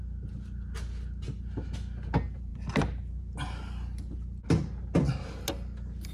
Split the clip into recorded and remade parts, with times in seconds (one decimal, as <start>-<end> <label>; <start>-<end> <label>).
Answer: 0.0-6.1 recorded